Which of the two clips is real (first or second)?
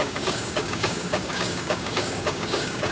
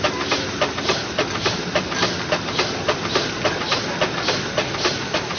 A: second